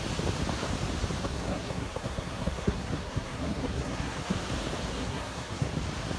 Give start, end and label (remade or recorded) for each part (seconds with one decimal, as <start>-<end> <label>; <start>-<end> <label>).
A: 0.0-1.2 recorded; 1.2-4.5 remade; 4.5-4.9 recorded; 4.9-5.7 remade; 5.7-6.2 recorded